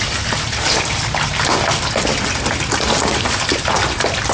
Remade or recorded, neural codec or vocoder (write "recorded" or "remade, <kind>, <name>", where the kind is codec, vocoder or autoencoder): recorded